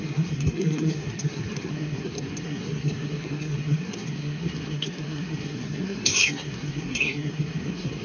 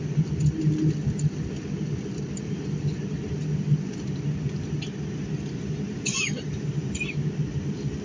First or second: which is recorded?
second